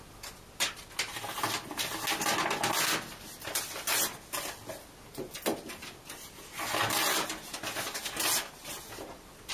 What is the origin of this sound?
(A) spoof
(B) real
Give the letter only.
B